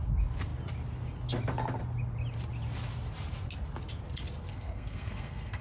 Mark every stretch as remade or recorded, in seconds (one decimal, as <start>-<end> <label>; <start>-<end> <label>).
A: 0.0-4.5 recorded; 4.5-5.6 remade